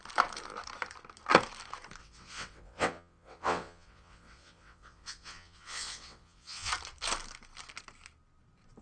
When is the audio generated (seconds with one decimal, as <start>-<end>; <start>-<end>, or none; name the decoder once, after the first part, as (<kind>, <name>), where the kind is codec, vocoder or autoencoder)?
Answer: 2.0-6.7 (vocoder, WaveNeXt)